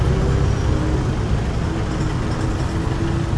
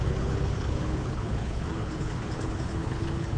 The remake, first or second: second